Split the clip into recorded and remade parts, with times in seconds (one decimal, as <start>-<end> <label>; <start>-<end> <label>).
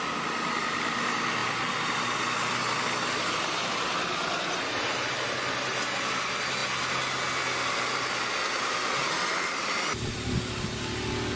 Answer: 0.0-11.4 recorded